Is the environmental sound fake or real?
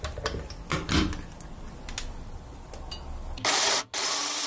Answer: real